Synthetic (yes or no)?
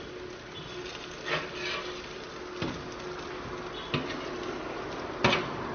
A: no